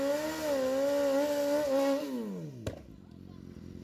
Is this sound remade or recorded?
recorded